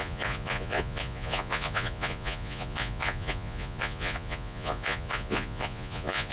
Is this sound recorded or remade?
remade